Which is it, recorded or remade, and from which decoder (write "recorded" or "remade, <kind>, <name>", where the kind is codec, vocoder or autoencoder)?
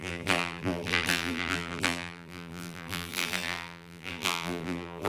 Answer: remade, vocoder, BigVGAN v2